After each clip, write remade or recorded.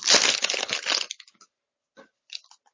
recorded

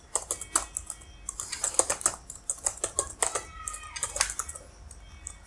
recorded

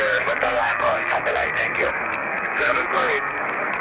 remade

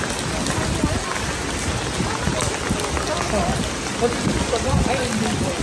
recorded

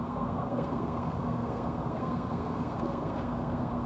remade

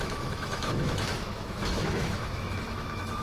remade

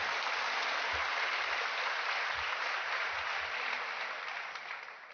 remade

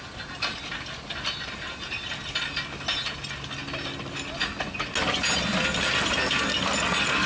recorded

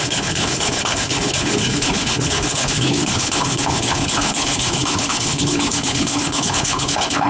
remade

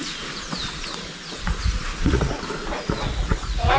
remade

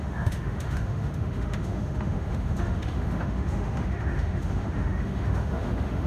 remade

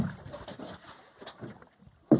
recorded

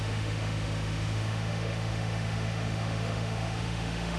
remade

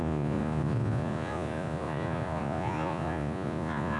remade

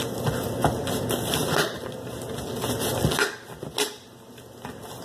recorded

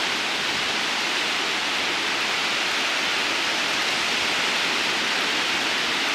recorded